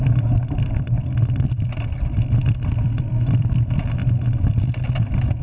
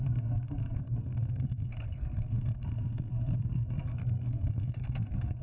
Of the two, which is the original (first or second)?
first